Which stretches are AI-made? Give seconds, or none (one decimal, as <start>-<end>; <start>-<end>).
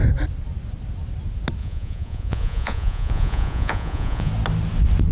1.6-4.3